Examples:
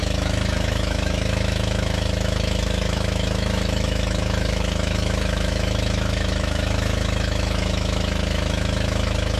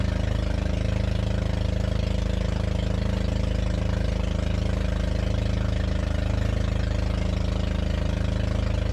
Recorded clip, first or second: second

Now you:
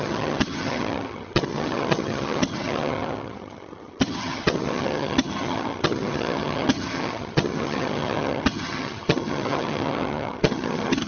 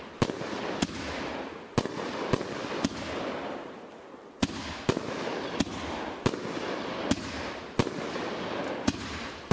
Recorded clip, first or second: second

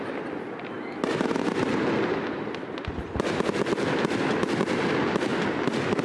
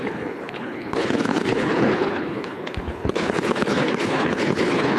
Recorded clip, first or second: first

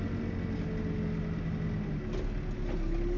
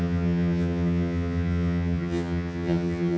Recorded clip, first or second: first